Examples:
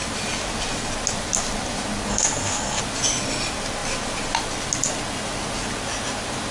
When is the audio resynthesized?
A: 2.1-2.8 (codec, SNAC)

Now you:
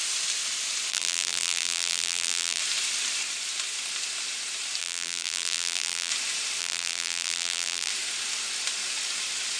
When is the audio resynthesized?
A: 0.9-2.6 (vocoder, BigVGAN v2); 4.8-6.1; 6.6-7.9

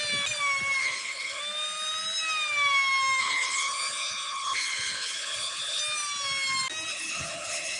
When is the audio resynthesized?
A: 0.8-1.4 (codec, HILCodec); 3.2-5.8; 6.9-7.8

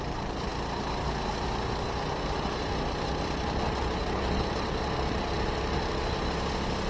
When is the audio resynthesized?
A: none

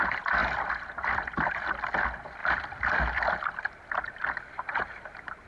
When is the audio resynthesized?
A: 0.4-1.5 (vocoder, BigVGAN v2); 2.4-3.8

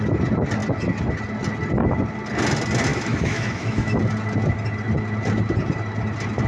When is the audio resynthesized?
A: 2.9-4.0 (autoencoder, DAC-VAE)

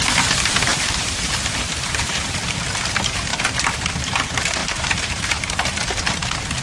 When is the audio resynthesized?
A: 0.7-2.5 (vocoder, BigVGAN v2); 3.3-3.9; 4.6-5.5